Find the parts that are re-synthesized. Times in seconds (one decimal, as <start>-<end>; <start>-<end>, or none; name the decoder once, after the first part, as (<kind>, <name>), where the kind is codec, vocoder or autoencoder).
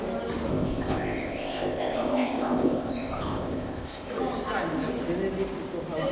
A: 0.5-4.2 (codec, ZipCodec)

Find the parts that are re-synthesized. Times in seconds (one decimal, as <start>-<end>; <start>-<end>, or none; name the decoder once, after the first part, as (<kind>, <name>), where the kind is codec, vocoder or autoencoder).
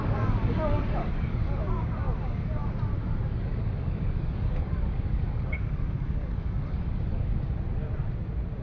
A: 0.0-2.6 (codec, DAC); 3.3-7.3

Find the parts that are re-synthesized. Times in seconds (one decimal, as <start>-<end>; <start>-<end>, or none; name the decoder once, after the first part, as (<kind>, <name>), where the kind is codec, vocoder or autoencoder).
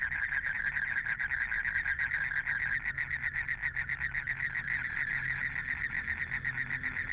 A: none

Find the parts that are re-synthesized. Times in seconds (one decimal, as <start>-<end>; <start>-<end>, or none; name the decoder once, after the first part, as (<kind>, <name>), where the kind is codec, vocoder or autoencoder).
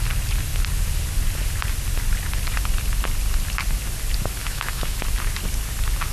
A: 4.4-5.0 (autoencoder, DAC-VAE)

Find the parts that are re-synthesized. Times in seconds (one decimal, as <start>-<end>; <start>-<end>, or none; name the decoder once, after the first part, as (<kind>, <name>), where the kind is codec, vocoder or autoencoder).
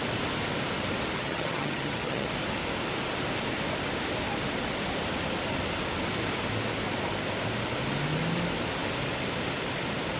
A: 1.2-2.3 (vocoder, HiFi-GAN)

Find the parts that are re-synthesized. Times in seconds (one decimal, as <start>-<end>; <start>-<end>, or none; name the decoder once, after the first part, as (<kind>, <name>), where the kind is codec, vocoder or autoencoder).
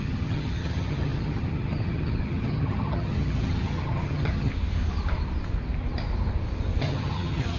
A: 0.0-4.5 (vocoder, HiFi-GAN); 6.8-7.6